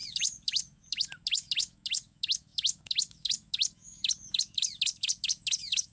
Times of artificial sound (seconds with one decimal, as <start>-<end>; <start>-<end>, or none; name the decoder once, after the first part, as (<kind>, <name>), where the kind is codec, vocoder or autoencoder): 0.0-5.9 (autoencoder, DAC-VAE)